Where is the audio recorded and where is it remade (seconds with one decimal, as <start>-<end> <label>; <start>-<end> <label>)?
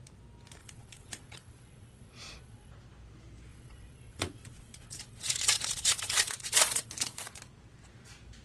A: 0.0-0.6 recorded; 0.6-2.7 remade; 2.7-3.5 recorded; 3.5-7.4 remade; 7.4-8.4 recorded